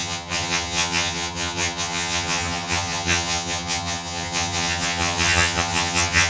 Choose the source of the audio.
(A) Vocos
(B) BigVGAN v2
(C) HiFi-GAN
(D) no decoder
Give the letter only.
C